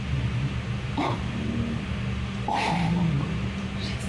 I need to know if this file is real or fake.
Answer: real